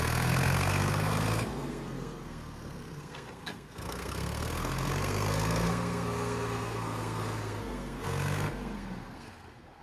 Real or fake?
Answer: fake